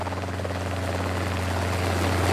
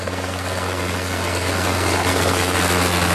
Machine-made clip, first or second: second